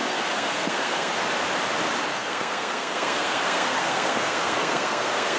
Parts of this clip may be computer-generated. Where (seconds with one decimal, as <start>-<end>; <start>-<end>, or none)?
0.0-1.1; 2.1-5.4